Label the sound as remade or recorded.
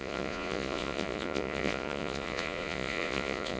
remade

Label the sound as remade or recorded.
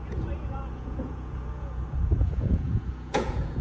remade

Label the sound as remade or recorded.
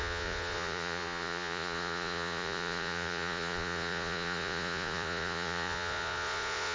remade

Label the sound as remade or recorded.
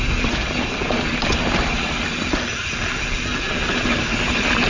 recorded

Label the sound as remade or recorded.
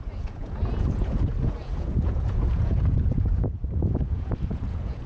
remade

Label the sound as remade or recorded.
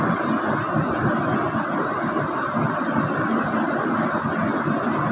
recorded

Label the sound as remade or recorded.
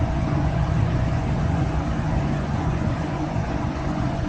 remade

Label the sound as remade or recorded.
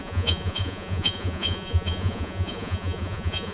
remade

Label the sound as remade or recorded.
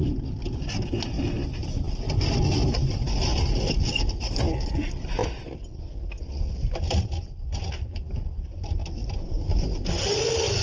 recorded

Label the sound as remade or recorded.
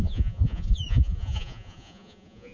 remade